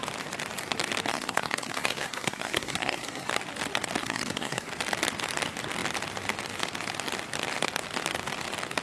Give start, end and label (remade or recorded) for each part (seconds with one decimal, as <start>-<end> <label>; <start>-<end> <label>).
0.0-1.1 recorded; 1.1-3.3 remade; 3.3-4.0 recorded; 4.0-4.7 remade; 4.7-8.8 recorded